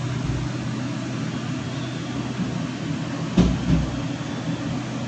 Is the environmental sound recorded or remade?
recorded